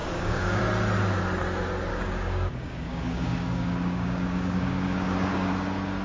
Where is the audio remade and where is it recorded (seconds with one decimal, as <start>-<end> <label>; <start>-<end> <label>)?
0.0-0.6 remade; 0.6-1.9 recorded; 1.9-5.5 remade; 5.5-6.0 recorded